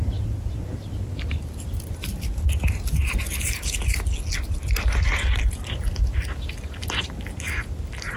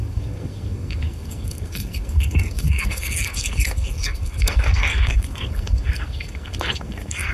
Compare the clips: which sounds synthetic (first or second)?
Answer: second